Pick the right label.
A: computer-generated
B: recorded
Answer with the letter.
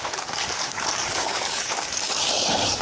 A